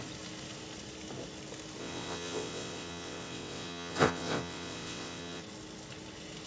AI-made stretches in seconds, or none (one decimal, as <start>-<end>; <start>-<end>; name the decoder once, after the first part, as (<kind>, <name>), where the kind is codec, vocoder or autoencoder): 1.8-5.4 (vocoder, WaveNeXt)